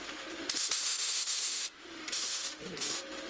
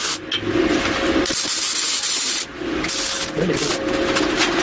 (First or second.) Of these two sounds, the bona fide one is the second